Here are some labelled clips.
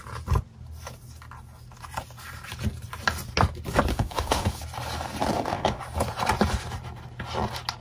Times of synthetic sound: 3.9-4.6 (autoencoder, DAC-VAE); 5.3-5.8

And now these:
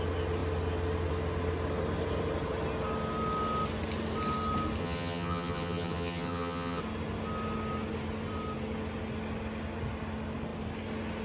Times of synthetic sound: 4.8-6.8 (vocoder, HiFi-GAN)